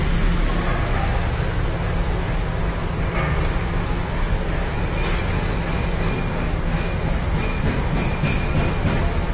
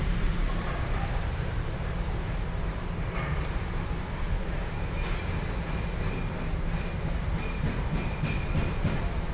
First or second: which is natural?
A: first